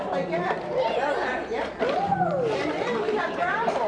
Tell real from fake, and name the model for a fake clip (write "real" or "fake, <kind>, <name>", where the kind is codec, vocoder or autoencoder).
real